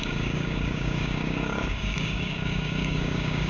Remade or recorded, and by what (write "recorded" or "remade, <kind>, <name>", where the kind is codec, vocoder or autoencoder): remade, codec, DAC